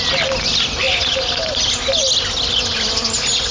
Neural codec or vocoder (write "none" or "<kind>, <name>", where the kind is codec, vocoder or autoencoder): none